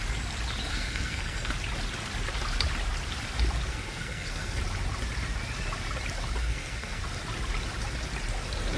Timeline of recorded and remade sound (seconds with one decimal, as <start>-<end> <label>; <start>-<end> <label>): 0.0-0.7 recorded; 0.7-1.5 remade; 1.5-3.7 recorded; 3.7-4.6 remade; 4.6-6.4 recorded; 6.4-7.0 remade; 7.0-8.8 recorded